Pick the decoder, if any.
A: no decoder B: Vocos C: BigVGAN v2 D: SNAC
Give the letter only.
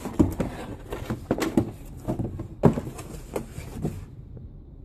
A